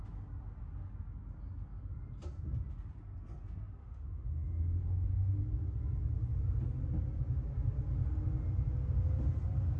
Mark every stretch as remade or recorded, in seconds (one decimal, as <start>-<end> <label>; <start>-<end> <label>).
0.0-3.8 recorded; 3.8-5.4 remade; 5.4-9.8 recorded